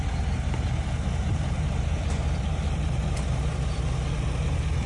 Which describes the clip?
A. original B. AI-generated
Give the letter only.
A